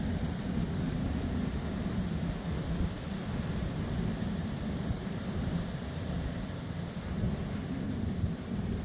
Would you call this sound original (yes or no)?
yes